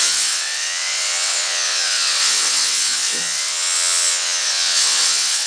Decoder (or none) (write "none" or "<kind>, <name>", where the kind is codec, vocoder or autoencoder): vocoder, WaveNeXt